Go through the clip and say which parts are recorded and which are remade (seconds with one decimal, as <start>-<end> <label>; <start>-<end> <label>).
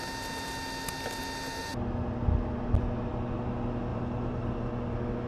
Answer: 0.0-3.9 recorded; 3.9-4.7 remade; 4.7-5.3 recorded